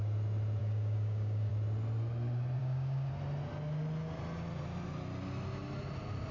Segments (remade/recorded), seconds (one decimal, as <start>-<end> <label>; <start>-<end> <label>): 0.0-0.6 recorded; 0.6-1.5 remade; 1.5-2.6 recorded; 2.6-3.1 remade; 3.1-6.3 recorded